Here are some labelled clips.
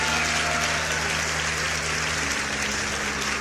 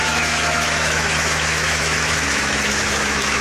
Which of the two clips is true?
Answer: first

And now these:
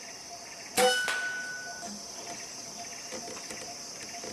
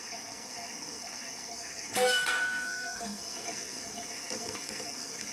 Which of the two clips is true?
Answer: first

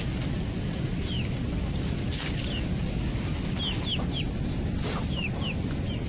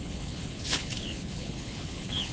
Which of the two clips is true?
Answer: first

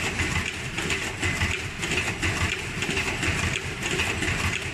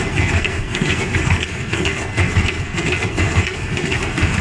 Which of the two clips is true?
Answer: first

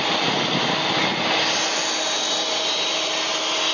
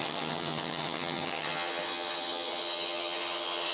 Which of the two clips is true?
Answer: first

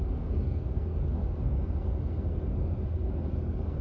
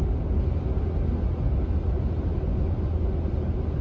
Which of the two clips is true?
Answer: second